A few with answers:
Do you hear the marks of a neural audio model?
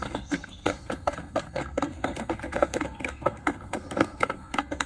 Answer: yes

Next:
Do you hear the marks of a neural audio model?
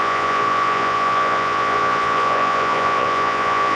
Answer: yes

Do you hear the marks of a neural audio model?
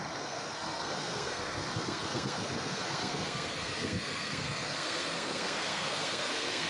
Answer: yes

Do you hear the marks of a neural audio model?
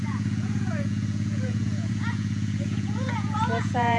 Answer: yes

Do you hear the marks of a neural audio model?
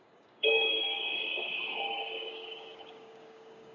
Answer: yes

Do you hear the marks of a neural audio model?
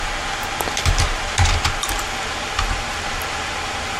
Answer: no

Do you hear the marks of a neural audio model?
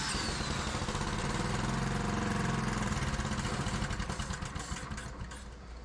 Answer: no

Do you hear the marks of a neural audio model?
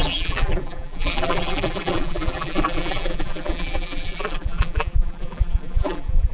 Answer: yes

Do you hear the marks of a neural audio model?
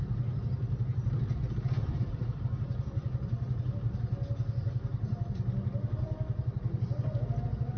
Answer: no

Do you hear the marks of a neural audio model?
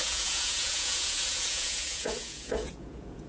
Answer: yes